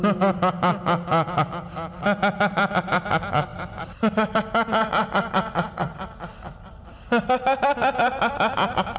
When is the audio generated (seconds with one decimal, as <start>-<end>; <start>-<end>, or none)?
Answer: 3.5-4.0